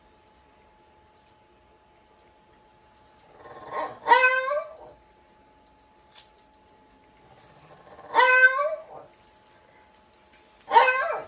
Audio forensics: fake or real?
real